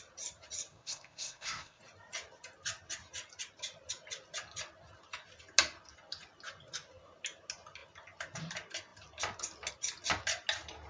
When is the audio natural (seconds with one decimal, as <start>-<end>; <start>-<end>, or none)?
0.0-0.7; 1.8-10.9

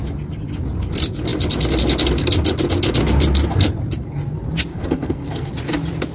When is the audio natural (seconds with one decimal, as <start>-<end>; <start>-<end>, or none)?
0.0-4.7; 5.5-6.1

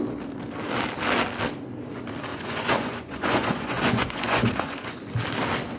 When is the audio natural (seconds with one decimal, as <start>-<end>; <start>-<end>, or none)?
0.0-2.3; 5.0-5.8

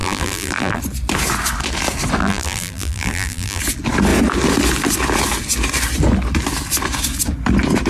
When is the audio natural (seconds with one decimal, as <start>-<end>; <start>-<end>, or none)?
0.8-2.2; 3.6-7.9

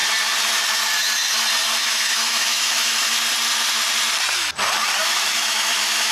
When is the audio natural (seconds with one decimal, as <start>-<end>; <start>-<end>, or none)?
0.0-1.8; 3.0-5.0

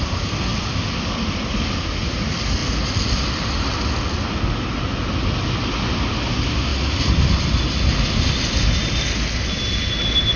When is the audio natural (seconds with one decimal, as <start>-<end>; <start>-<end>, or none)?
0.0-10.4

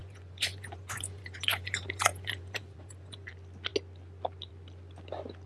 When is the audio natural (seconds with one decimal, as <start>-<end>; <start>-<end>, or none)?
3.3-5.5